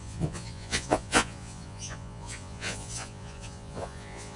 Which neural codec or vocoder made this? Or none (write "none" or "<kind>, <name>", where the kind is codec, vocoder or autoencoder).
vocoder, Vocos